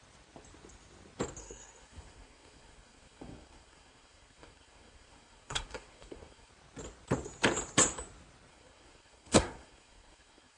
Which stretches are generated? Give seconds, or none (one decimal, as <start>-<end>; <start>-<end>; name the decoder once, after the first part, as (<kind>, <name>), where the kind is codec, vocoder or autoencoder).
1.4-6.5 (codec, SNAC); 8.5-10.6